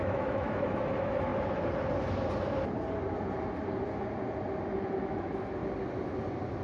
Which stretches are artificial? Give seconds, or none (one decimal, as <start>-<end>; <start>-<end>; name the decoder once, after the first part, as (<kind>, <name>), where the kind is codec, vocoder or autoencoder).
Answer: 0.0-1.3 (autoencoder, DAC-VAE); 4.6-5.6